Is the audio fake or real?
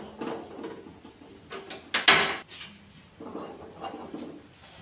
real